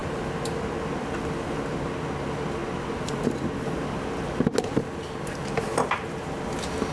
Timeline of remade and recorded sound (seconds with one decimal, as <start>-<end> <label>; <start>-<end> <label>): 0.0-6.9 recorded

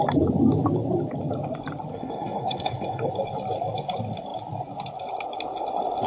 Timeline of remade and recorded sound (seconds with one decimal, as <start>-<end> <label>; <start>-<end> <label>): 0.0-1.9 recorded; 1.9-3.1 remade; 3.1-6.1 recorded

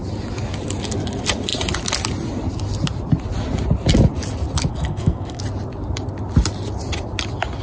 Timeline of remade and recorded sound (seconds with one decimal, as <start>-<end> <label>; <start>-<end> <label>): 0.0-4.7 recorded; 4.7-5.4 remade; 5.4-7.6 recorded

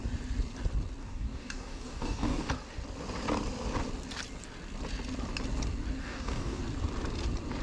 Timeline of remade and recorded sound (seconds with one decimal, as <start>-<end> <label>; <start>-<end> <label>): 0.0-1.0 recorded; 1.0-2.5 remade; 2.5-6.0 recorded; 6.0-6.6 remade; 6.6-7.6 recorded

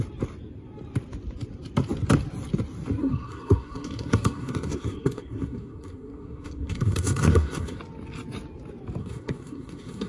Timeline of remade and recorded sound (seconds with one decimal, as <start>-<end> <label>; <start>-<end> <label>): 0.0-3.0 recorded; 3.0-7.8 remade; 7.8-9.0 recorded; 9.0-10.1 remade

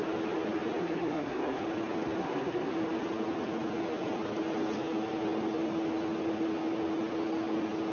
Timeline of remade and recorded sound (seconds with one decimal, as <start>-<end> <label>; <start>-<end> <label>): 0.0-0.8 recorded; 0.8-1.6 remade; 1.6-2.2 recorded; 2.2-2.7 remade; 2.7-7.9 recorded